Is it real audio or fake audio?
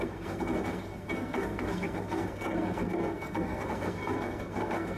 fake